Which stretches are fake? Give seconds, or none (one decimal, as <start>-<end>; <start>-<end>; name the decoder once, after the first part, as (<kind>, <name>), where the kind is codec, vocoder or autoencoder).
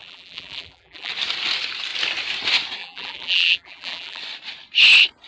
0.0-1.1 (vocoder, BigVGAN v2); 2.8-4.2